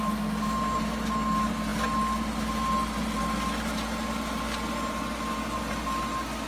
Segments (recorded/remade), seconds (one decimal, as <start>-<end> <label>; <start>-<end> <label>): 0.0-6.5 recorded